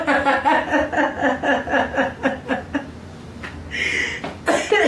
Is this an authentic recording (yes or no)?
yes